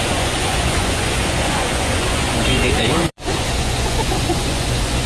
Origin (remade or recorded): remade